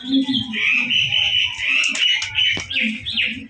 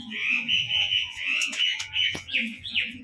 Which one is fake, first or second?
second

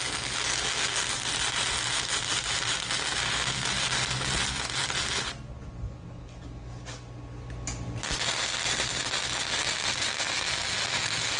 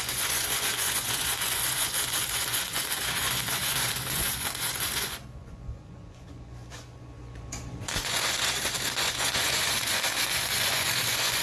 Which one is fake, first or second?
second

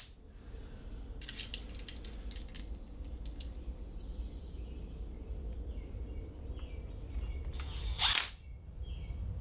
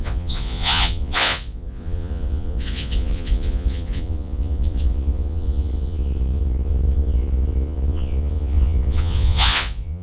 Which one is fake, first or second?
second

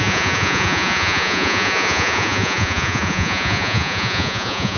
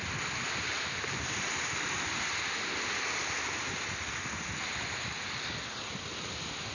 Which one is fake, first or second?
first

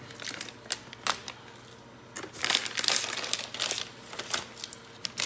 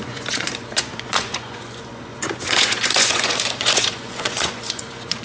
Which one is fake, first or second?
second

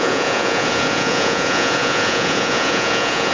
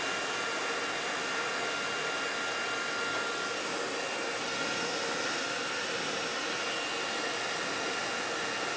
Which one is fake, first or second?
first